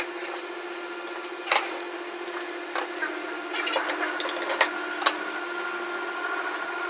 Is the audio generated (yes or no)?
no